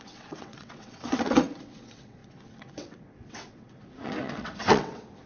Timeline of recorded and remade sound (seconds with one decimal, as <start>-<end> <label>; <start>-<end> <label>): 0.0-5.3 remade

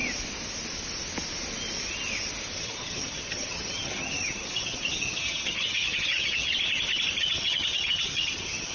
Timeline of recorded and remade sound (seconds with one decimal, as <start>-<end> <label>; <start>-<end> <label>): 0.0-2.6 recorded; 2.6-6.5 remade; 6.5-7.2 recorded; 7.2-8.7 remade